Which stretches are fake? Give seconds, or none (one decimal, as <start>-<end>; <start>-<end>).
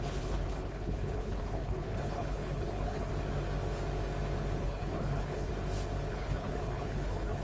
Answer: 0.0-3.1; 4.6-5.5; 6.1-7.4